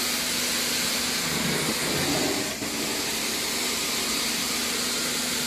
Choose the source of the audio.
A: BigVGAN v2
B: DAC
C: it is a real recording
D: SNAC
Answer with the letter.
C